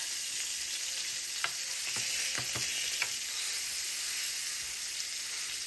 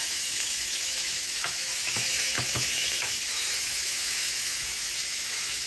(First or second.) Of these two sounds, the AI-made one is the second